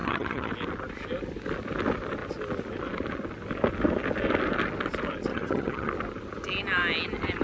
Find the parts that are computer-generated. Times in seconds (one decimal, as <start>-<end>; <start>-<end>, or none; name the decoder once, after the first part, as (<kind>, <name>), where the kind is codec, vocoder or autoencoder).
0.0-0.5 (vocoder, HiFi-GAN); 5.3-5.9